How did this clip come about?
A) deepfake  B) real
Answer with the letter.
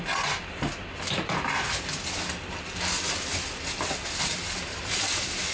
B